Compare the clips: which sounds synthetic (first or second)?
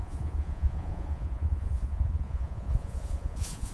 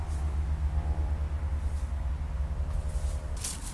first